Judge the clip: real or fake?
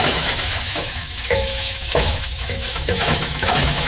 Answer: fake